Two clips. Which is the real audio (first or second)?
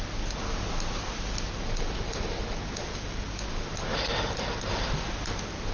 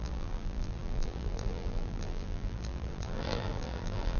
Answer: first